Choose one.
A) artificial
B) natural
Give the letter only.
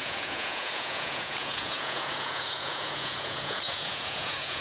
A